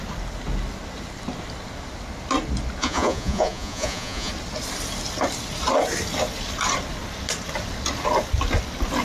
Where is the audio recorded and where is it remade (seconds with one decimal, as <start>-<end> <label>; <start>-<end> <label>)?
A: 0.0-2.8 recorded; 2.8-4.3 remade; 4.3-9.0 recorded